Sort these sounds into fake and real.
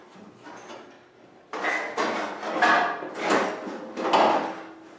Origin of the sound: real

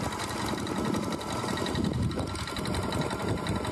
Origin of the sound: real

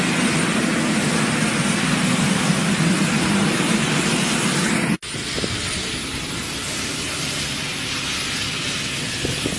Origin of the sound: real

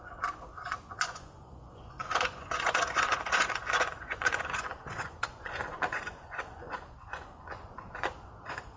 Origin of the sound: fake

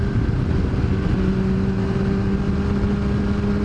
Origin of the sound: real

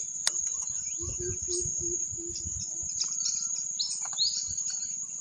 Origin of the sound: real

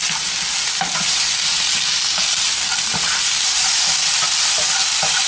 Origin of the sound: real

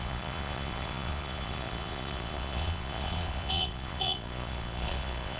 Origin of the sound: fake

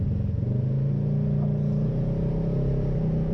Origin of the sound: real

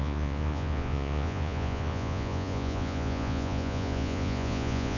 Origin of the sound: fake